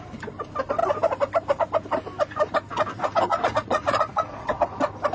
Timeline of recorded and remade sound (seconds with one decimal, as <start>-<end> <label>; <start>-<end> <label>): 0.0-3.3 recorded; 3.3-4.5 remade; 4.5-5.1 recorded